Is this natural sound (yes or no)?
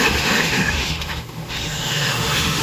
no